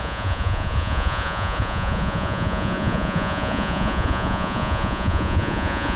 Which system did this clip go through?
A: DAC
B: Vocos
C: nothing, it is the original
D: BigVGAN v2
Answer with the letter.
B